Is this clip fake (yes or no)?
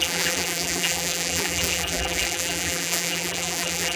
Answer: yes